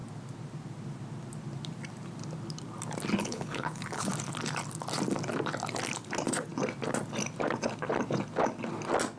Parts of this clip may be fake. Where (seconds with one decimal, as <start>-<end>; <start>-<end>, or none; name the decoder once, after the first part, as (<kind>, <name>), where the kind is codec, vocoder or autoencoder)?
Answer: 3.2-4.1 (codec, HILCodec)